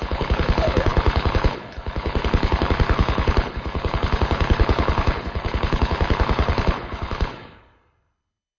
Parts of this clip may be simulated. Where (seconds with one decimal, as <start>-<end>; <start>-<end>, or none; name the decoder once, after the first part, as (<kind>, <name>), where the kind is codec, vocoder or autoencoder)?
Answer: 0.0-8.6 (codec, HILCodec)

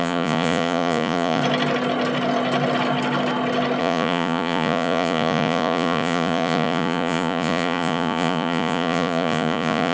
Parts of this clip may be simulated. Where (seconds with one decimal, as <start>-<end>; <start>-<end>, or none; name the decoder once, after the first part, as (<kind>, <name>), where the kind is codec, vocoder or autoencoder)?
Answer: 0.0-1.4 (vocoder, Vocos); 3.8-9.9

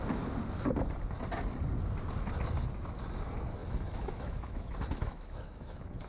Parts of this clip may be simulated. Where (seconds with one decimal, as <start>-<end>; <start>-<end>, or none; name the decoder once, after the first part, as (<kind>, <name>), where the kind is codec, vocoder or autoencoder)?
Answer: 3.6-6.1 (autoencoder, DAC-VAE)